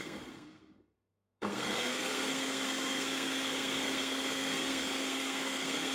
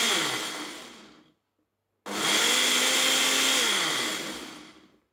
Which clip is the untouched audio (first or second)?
second